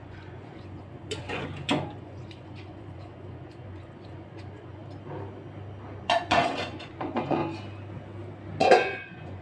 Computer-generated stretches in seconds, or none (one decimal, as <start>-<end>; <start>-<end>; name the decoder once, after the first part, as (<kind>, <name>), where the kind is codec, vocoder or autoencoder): 0.0-4.8 (vocoder, Vocos); 6.0-7.4; 8.6-9.4